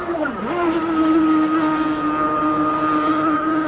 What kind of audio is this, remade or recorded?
recorded